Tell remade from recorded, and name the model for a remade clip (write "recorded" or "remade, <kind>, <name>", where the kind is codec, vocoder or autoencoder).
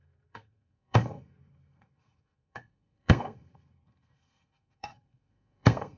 remade, codec, SNAC